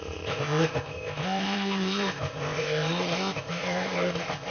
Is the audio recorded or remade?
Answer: remade